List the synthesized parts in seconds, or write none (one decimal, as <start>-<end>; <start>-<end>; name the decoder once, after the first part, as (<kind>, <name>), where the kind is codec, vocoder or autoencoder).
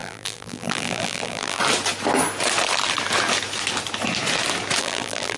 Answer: 0.0-1.6 (vocoder, BigVGAN v2); 4.8-5.4